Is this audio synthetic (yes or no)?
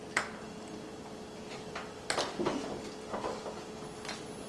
no